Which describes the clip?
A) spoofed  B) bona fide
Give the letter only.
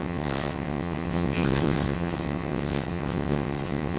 A